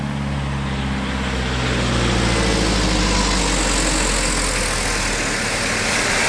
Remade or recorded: recorded